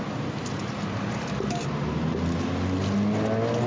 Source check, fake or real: real